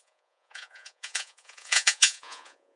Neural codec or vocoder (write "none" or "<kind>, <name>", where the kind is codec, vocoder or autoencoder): vocoder, Vocos